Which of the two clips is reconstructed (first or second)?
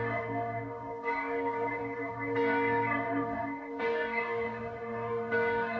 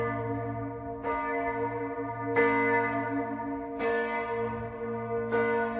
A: first